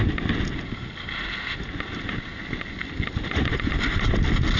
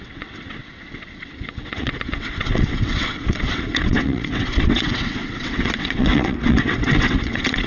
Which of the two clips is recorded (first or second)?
first